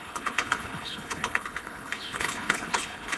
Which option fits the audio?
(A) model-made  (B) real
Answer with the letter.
A